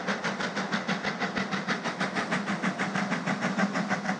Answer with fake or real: real